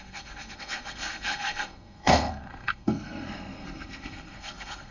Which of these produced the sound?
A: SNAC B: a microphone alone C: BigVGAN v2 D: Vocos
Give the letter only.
A